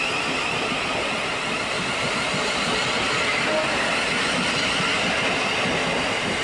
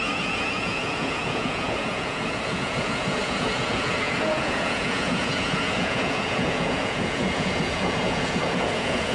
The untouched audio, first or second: first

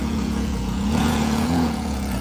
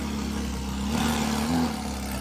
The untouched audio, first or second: second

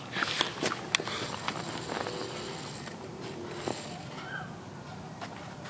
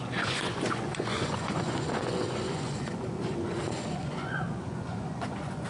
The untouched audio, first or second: first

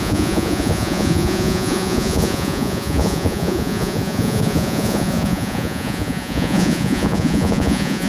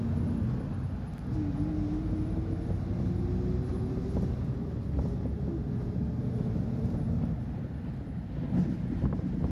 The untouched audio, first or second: second